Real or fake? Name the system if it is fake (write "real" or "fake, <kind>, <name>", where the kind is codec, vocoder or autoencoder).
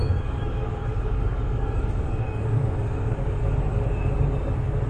fake, codec, DAC